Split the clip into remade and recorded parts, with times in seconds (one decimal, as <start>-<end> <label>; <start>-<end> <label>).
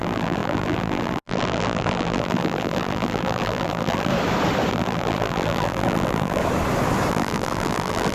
0.0-4.1 remade; 4.1-4.7 recorded; 4.7-6.4 remade; 6.4-7.1 recorded; 7.1-8.1 remade